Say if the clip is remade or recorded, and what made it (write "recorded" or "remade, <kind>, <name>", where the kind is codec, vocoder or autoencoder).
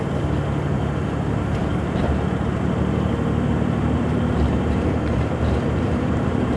remade, vocoder, BigVGAN v2